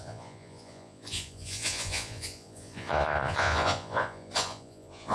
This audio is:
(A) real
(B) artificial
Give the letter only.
B